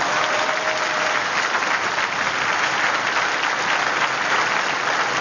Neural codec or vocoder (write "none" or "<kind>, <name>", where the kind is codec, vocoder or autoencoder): none